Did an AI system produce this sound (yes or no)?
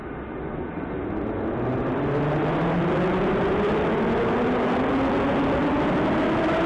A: no